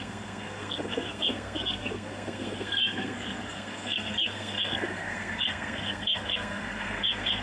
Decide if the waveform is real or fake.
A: fake